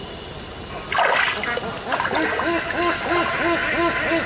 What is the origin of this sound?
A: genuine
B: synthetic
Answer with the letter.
A